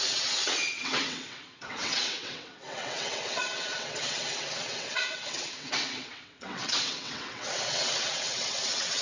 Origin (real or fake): fake